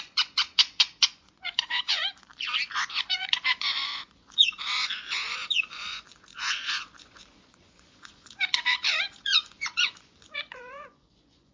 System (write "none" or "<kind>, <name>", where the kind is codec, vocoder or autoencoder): vocoder, Vocos